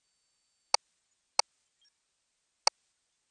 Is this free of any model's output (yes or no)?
yes